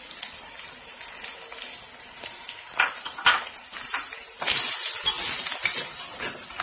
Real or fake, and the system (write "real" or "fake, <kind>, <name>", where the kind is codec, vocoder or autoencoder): real